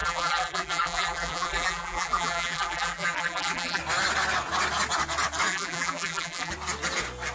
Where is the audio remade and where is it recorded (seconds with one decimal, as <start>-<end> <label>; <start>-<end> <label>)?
0.0-3.8 remade; 3.8-5.5 recorded; 5.5-6.5 remade; 6.5-7.3 recorded